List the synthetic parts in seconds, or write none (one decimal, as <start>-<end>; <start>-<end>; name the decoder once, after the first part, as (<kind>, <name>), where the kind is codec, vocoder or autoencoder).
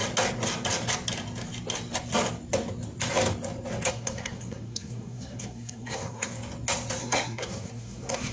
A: 3.9-6.3 (codec, SNAC); 7.0-8.3